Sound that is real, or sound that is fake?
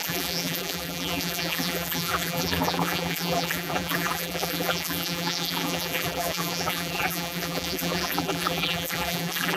fake